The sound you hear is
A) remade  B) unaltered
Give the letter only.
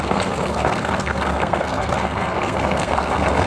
A